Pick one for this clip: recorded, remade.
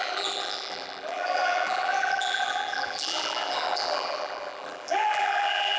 remade